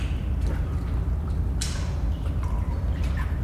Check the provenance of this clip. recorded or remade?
recorded